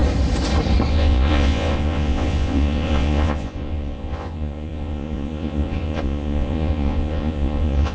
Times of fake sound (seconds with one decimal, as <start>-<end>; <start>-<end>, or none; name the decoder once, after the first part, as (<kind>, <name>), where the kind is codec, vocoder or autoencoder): 0.9-7.9 (vocoder, Vocos)